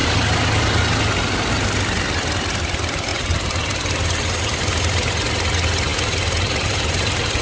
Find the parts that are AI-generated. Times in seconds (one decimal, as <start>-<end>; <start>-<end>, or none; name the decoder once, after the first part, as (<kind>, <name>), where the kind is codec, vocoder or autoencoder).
none